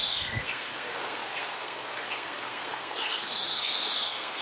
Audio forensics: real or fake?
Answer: fake